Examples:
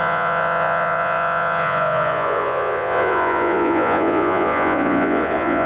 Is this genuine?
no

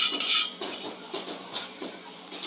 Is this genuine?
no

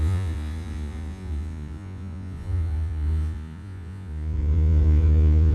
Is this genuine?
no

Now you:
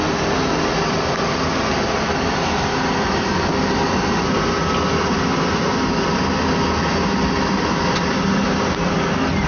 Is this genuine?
yes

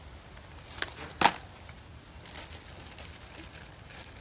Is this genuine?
yes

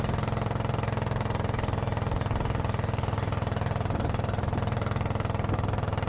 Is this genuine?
yes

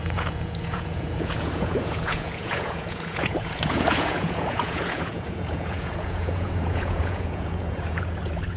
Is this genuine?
no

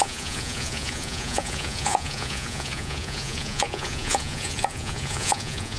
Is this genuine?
no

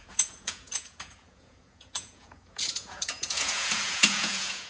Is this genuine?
no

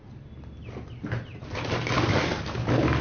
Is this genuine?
yes